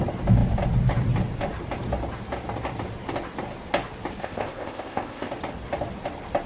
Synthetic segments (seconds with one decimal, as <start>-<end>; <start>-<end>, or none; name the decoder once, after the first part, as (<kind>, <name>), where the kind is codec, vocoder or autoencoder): 4.2-5.3 (codec, ZipCodec)